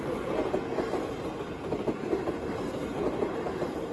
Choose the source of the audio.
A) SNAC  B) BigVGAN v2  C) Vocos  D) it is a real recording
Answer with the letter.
D